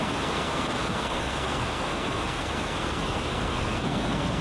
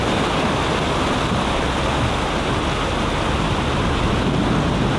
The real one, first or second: second